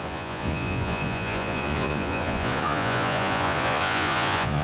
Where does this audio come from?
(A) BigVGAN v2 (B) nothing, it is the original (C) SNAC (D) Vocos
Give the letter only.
D